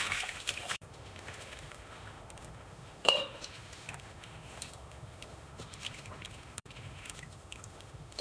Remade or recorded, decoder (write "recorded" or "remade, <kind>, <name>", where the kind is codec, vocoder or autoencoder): remade, autoencoder, DAC-VAE